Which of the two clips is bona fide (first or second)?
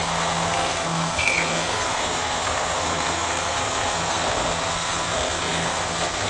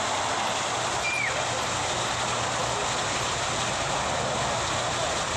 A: second